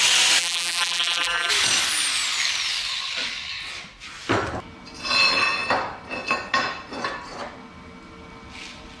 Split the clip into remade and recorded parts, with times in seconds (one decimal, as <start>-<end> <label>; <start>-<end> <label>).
0.0-0.4 recorded; 0.4-1.5 remade; 1.5-9.0 recorded